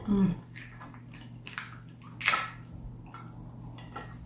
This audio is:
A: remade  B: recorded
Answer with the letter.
B